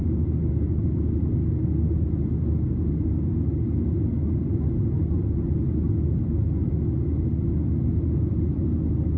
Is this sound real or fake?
real